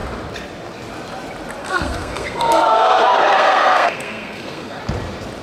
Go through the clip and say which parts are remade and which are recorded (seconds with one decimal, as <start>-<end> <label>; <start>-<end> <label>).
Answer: 0.0-1.6 recorded; 1.6-4.8 remade; 4.8-5.4 recorded